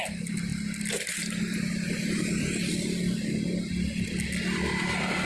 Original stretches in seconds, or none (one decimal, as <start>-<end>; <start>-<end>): 0.0-5.3